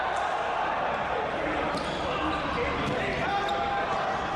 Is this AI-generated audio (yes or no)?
no